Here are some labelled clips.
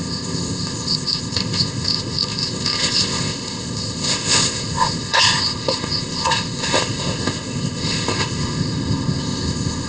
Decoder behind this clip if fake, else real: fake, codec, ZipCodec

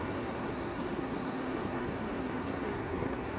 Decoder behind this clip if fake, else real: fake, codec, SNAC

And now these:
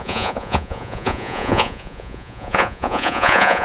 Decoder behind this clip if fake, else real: fake, vocoder, Vocos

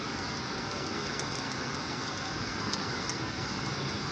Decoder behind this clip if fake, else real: fake, codec, SNAC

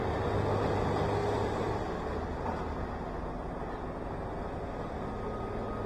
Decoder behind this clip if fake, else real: real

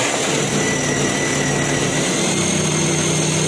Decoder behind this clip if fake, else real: real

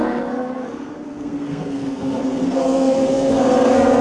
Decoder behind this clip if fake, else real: fake, codec, SNAC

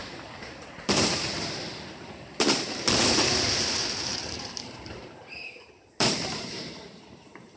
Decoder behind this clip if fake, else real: fake, vocoder, BigVGAN v2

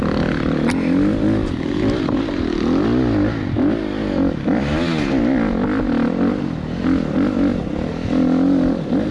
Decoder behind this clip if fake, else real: real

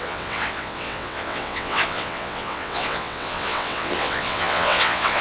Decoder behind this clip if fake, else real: fake, vocoder, WaveNeXt